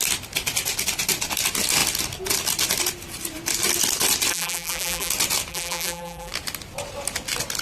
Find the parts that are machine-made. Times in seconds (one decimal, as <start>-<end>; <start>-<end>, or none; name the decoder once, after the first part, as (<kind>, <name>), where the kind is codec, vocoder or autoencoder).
4.3-5.1 (vocoder, BigVGAN v2); 5.5-6.3

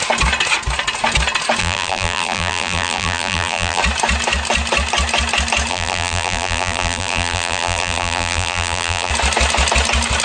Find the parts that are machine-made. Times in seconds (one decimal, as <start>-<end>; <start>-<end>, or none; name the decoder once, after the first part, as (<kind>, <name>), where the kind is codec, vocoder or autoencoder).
1.6-3.8 (vocoder, BigVGAN v2); 5.7-9.1

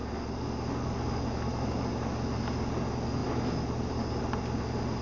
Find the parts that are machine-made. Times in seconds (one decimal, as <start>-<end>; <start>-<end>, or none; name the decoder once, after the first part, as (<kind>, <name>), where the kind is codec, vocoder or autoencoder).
none

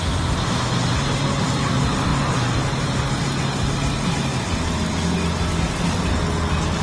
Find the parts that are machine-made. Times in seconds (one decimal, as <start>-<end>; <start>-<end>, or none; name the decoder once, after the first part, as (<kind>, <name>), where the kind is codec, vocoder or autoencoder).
2.1-3.2 (vocoder, BigVGAN v2)

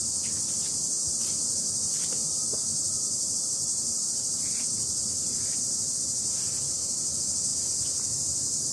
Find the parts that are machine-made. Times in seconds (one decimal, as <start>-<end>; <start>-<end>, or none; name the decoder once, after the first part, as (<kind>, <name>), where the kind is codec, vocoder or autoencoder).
1.2-6.4 (vocoder, BigVGAN v2)